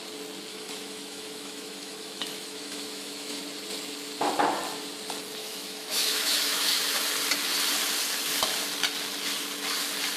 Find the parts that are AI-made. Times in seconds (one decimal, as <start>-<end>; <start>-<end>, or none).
0.5-3.4; 5.4-6.8